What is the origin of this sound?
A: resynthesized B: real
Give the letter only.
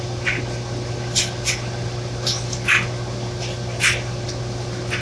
B